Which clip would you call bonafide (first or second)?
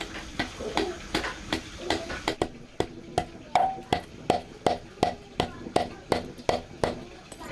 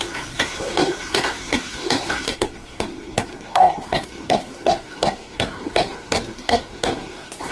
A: first